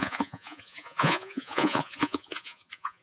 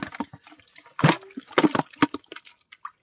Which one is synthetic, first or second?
first